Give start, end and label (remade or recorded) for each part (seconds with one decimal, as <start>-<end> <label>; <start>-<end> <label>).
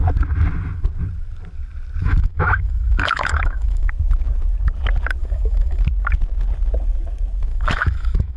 0.0-2.0 recorded; 2.0-3.9 remade; 3.9-5.2 recorded; 5.2-5.8 remade; 5.8-7.5 recorded; 7.5-8.4 remade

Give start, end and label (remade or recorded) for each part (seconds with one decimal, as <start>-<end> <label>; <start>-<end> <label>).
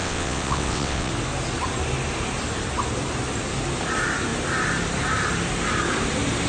0.0-1.1 remade; 1.1-6.5 recorded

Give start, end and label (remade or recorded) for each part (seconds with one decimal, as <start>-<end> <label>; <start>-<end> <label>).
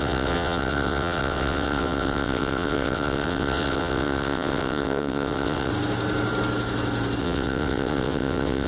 0.0-5.7 remade; 5.7-7.2 recorded; 7.2-8.7 remade